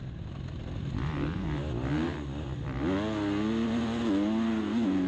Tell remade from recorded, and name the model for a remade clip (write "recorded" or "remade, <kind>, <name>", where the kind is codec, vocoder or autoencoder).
recorded